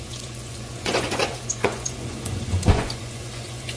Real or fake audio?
fake